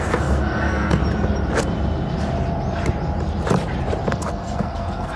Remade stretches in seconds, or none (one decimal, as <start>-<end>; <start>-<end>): 0.0-1.0; 4.1-5.2